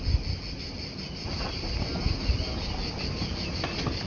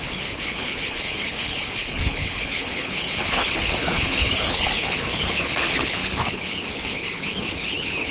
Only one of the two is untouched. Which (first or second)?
first